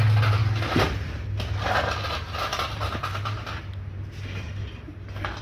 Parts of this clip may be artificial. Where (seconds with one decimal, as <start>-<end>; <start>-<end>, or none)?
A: none